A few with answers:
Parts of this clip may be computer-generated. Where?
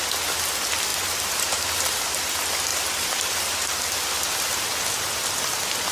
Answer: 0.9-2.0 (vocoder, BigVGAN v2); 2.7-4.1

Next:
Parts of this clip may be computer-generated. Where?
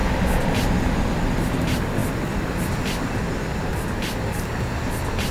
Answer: none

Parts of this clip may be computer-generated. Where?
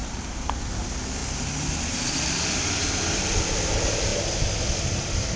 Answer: none